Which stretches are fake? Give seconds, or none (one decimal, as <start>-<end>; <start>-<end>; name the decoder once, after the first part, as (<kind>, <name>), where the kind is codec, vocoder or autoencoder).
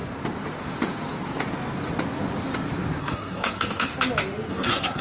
3.0-3.9 (codec, SNAC); 4.5-5.0